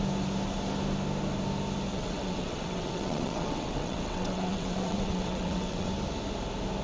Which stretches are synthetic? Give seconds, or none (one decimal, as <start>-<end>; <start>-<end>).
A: 1.9-5.9